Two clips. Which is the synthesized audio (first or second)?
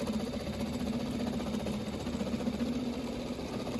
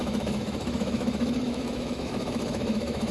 second